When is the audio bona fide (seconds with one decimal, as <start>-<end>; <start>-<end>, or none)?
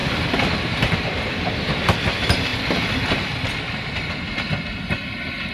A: 1.8-5.5